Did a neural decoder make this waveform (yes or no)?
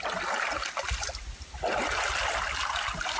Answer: no